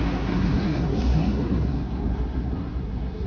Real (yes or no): no